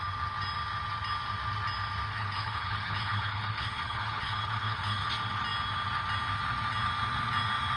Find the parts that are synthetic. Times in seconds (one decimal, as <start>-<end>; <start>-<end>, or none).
2.1-5.1